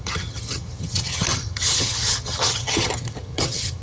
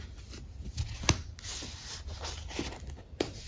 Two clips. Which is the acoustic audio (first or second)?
second